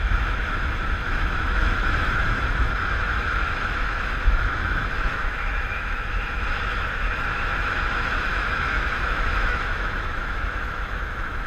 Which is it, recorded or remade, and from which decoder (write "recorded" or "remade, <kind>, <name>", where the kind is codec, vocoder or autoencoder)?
remade, autoencoder, DAC-VAE